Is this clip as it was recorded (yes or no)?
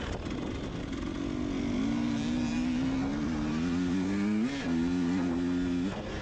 yes